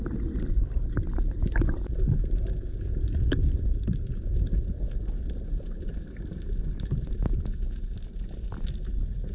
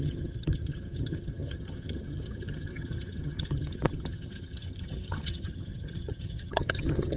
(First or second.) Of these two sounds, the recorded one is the first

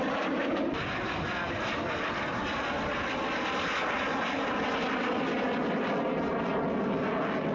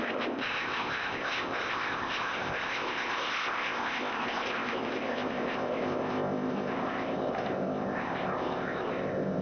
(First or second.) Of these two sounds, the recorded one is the first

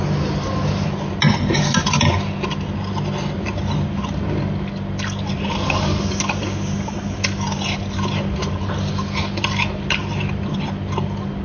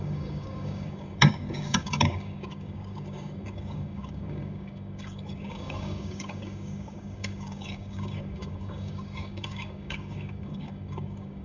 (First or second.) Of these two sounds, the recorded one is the first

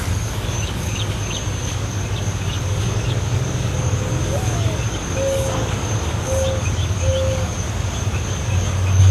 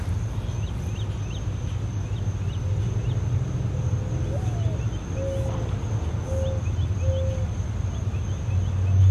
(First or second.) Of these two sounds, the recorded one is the second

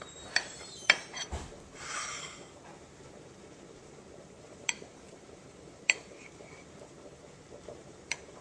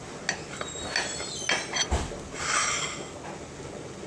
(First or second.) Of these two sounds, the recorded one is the second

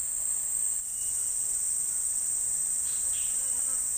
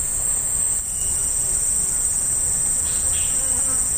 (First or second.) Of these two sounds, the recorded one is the first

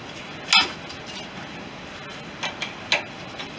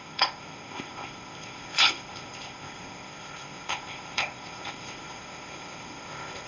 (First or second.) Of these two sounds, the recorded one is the first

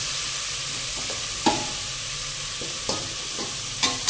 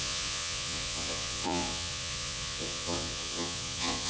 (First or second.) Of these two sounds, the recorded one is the first